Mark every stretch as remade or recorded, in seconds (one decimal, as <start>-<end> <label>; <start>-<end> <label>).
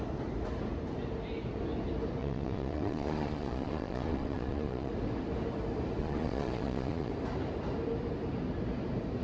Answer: 0.0-2.2 recorded; 2.2-4.9 remade; 4.9-6.0 recorded; 6.0-7.1 remade; 7.1-9.2 recorded